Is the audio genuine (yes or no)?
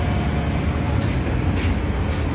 yes